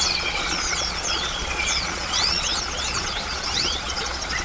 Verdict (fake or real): fake